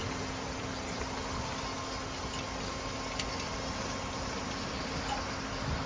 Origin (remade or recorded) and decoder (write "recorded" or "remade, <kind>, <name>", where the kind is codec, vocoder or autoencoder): recorded